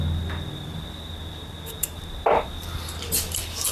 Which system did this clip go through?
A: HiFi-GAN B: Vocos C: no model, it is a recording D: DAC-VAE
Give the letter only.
C